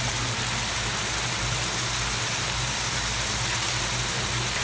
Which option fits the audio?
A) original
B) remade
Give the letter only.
A